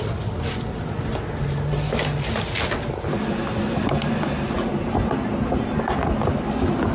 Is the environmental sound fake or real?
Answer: real